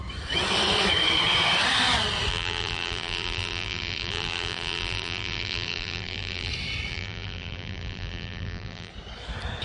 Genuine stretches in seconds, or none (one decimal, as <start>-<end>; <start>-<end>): 0.0-2.3; 6.5-6.9; 8.9-9.6